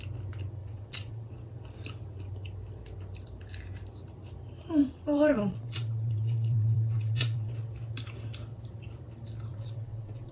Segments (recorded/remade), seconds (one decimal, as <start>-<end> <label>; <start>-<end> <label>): 0.0-0.6 recorded; 0.6-1.3 remade; 1.3-4.8 recorded; 4.8-7.5 remade; 7.5-9.5 recorded; 9.5-10.3 remade